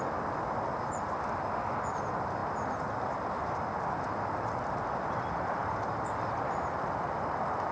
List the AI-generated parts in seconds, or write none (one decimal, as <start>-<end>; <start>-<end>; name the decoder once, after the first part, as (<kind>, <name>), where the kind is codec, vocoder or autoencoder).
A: none